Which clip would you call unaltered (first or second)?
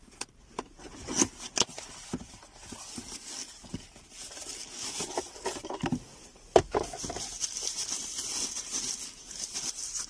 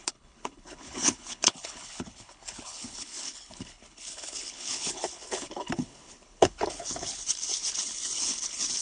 first